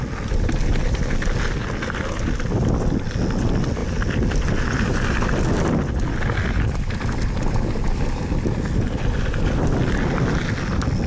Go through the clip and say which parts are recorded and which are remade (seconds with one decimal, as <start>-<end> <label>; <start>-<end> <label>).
0.0-11.1 recorded

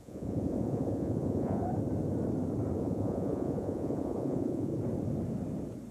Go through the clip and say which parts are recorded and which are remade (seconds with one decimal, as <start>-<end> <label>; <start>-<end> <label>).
0.0-1.6 remade; 1.6-2.8 recorded; 2.8-4.7 remade; 4.7-5.9 recorded

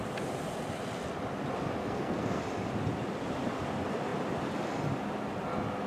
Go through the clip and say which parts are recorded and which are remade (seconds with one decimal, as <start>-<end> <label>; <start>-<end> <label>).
0.0-1.8 recorded; 1.8-2.4 remade; 2.4-5.9 recorded